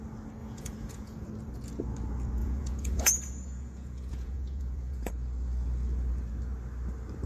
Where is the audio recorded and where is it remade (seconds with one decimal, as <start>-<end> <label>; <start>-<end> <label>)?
0.0-0.4 recorded; 0.4-1.3 remade; 1.3-2.4 recorded; 2.4-5.1 remade; 5.1-7.3 recorded